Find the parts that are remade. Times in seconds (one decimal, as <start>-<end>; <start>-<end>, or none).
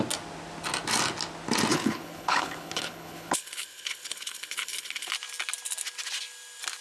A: 1.7-5.1